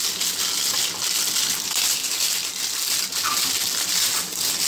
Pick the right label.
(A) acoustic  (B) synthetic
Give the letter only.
A